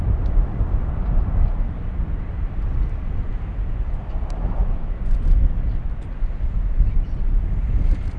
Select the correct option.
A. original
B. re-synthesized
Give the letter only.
B